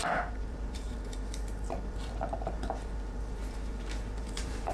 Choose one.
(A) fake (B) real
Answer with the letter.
A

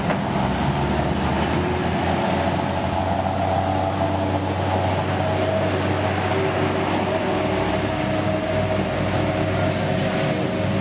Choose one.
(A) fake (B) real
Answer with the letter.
B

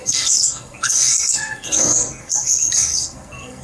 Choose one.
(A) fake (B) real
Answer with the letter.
A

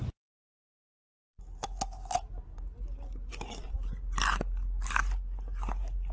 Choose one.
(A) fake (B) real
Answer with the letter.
B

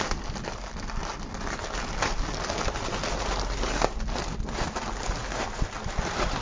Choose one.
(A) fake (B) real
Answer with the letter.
B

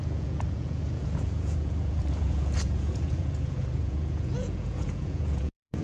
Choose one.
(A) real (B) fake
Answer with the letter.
B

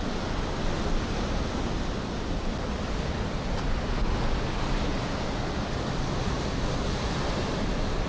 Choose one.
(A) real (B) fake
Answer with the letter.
A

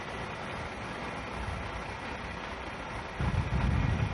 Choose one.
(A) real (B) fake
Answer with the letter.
A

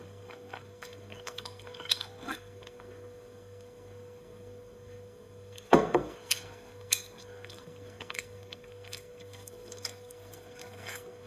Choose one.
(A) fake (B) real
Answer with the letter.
A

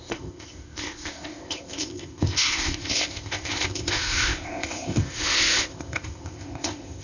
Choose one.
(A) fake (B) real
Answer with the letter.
A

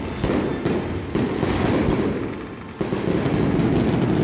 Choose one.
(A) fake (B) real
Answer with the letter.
B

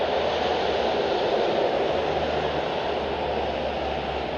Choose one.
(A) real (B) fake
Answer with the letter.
A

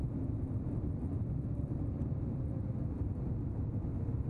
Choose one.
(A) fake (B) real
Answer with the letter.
B